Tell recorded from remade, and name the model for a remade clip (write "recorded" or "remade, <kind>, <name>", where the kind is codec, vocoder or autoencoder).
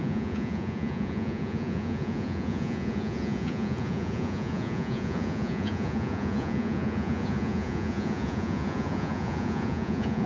remade, vocoder, Vocos